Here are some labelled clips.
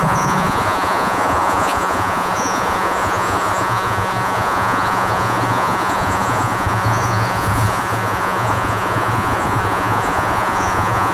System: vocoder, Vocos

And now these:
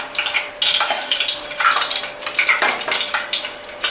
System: none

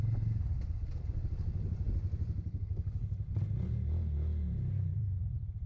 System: none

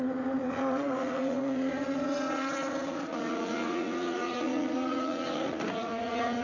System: vocoder, Vocos